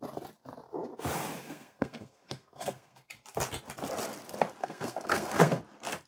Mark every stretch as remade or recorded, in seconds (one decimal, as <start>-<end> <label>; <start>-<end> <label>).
0.0-1.4 recorded; 1.4-3.1 remade; 3.1-4.6 recorded; 4.6-5.6 remade; 5.6-6.1 recorded